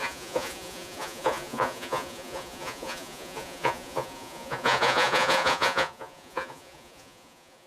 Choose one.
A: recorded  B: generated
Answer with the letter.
B